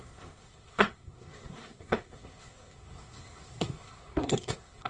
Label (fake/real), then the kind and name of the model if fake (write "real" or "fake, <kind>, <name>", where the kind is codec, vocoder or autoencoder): fake, codec, SNAC